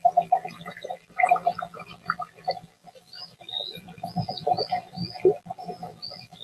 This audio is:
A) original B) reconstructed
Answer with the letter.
B